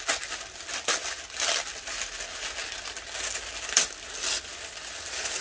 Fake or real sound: real